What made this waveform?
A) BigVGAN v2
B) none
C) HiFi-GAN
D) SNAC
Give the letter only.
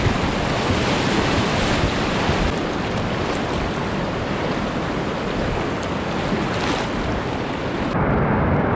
B